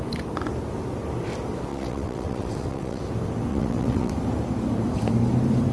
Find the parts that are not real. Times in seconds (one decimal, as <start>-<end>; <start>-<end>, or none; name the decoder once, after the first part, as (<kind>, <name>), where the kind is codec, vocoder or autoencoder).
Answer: 1.7-3.0 (vocoder, WaveNeXt); 3.5-4.1